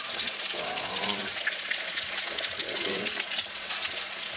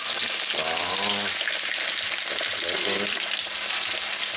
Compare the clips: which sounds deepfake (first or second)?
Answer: first